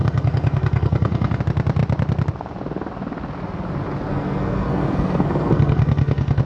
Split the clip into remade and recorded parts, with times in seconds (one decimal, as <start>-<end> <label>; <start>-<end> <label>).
0.0-1.4 remade; 1.4-4.1 recorded; 4.1-6.4 remade